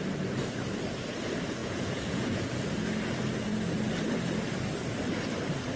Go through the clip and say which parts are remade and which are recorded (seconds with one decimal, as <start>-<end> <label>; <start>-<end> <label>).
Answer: 0.0-1.6 recorded; 1.6-2.6 remade; 2.6-5.8 recorded